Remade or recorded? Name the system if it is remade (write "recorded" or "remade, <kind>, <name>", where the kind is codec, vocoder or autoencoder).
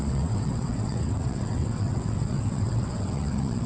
remade, vocoder, WaveNeXt